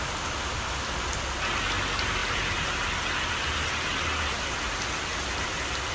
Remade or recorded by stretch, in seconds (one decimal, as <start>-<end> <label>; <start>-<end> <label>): 0.0-5.9 recorded